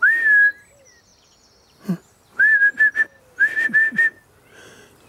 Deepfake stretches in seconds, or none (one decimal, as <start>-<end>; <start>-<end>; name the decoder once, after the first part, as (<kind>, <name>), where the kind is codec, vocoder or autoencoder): 1.1-3.2 (vocoder, BigVGAN v2)